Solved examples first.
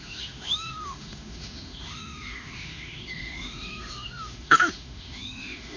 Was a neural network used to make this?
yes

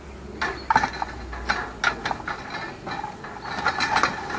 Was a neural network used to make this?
no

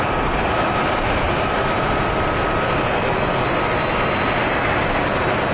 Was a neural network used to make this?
no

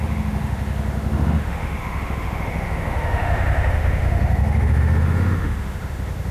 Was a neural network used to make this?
yes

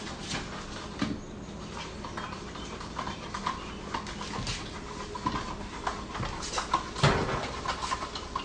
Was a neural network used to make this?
no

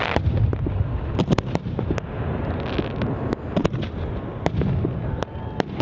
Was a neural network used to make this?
no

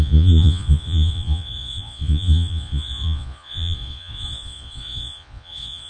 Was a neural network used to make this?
yes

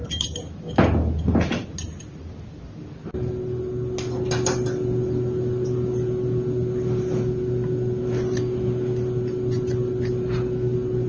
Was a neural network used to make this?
no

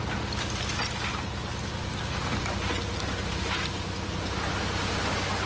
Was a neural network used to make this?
no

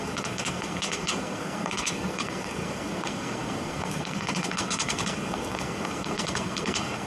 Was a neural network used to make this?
yes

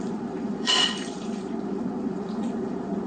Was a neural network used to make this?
yes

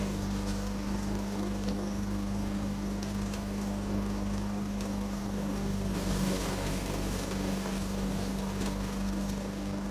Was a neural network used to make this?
yes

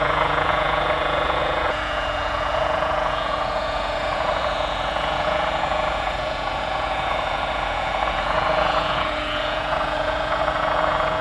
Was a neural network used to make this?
yes